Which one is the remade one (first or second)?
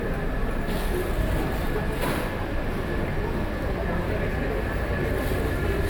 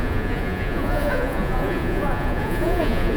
second